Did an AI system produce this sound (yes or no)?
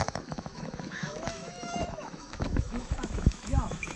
yes